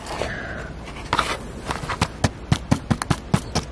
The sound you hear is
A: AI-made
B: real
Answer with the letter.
B